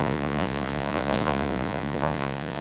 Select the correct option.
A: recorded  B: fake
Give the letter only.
B